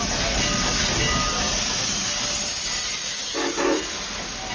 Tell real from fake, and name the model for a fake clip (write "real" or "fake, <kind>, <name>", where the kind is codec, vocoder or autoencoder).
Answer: real